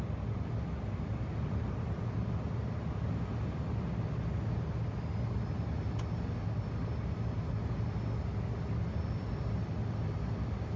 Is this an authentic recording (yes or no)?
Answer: yes